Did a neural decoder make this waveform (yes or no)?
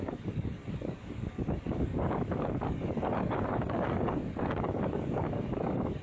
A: yes